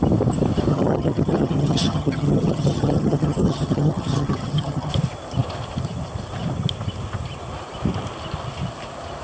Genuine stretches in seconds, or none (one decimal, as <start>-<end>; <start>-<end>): 0.0-0.7; 4.9-9.2